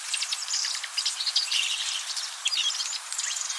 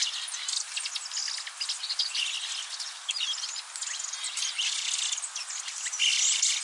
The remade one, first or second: first